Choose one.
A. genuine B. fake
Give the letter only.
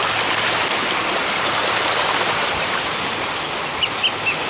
A